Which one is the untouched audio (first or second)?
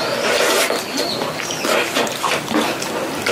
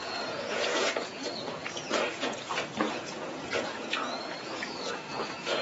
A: first